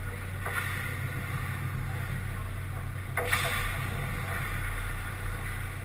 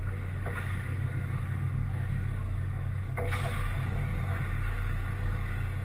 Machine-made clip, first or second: second